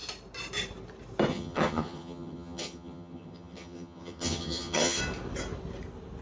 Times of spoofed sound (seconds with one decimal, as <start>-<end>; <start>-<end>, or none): 1.3-5.0